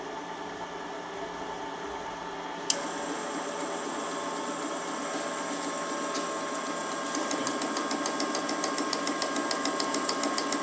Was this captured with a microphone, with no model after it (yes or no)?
yes